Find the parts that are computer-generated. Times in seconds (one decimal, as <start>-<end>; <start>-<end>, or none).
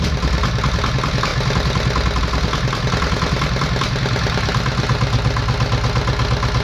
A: none